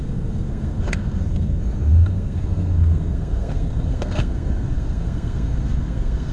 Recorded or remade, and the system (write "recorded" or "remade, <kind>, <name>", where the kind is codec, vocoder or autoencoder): remade, codec, SNAC